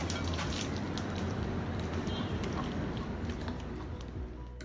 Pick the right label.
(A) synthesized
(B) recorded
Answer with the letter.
B